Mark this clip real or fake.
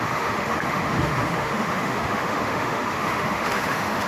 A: fake